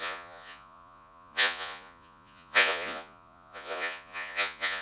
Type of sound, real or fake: fake